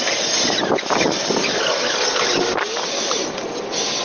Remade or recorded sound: recorded